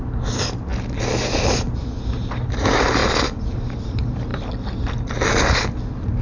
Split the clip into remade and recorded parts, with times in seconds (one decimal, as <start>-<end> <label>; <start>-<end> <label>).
0.0-0.7 remade; 0.7-2.2 recorded; 2.2-3.0 remade; 3.0-3.5 recorded; 3.5-4.3 remade; 4.3-5.8 recorded; 5.8-6.2 remade